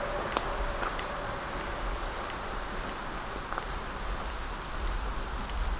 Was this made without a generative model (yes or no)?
yes